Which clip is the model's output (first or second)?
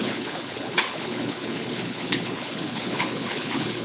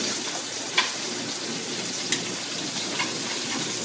first